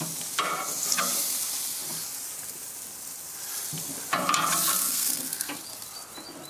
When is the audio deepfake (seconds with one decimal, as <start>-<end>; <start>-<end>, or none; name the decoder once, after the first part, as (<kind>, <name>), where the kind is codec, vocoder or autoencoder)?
4.8-5.5 (codec, SNAC)